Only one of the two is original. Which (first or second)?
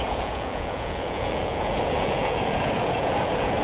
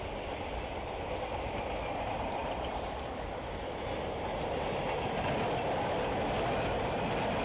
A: second